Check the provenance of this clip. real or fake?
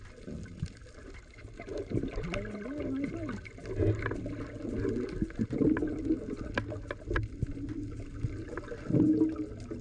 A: real